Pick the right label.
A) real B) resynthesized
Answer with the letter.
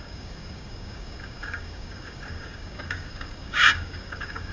B